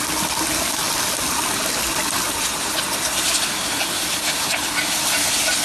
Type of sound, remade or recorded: recorded